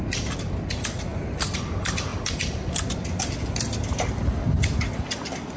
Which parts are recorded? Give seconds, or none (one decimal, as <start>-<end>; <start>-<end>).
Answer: 0.0-1.1; 1.6-5.6